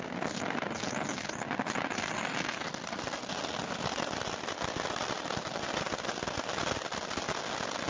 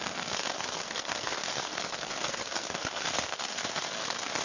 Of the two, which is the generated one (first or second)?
second